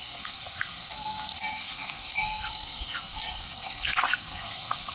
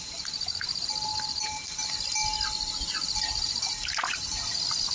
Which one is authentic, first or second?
second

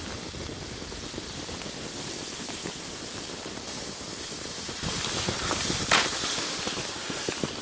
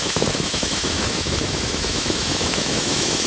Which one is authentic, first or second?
first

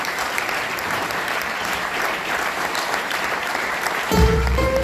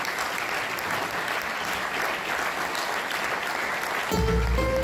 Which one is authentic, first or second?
second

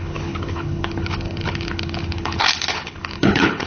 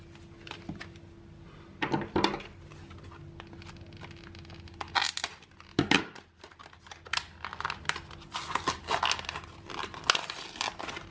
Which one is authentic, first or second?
second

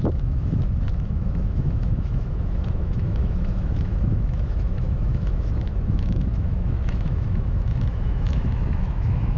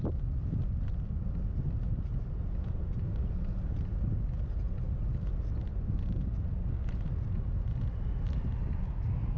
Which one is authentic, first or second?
second